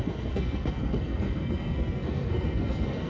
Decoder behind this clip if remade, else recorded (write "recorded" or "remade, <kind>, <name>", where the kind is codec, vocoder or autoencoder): remade, codec, SNAC